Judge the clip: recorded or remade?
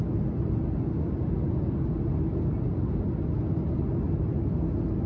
recorded